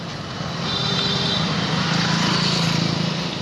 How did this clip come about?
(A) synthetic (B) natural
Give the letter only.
B